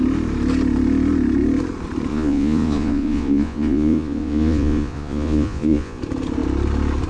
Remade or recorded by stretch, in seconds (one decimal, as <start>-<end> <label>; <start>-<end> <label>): 0.0-2.1 recorded; 2.1-6.0 remade; 6.0-7.1 recorded